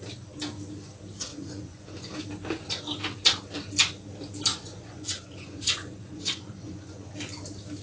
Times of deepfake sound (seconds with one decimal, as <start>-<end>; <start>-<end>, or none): 1.3-2.2; 4.5-7.1